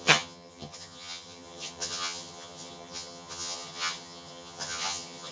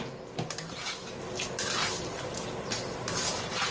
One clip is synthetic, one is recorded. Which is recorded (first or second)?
second